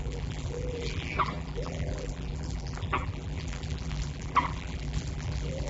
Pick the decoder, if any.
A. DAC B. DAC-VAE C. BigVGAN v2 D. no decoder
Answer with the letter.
C